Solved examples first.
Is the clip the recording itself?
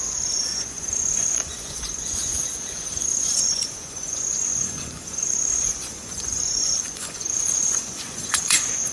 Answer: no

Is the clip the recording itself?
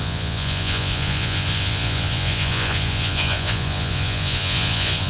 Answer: no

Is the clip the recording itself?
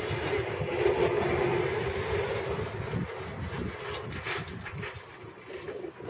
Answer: yes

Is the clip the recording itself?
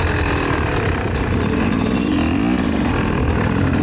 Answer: yes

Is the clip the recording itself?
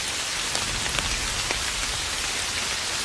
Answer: yes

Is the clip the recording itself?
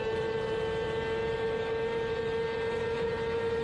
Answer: yes